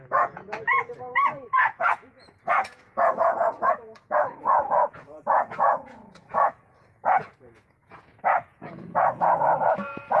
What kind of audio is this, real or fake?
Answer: fake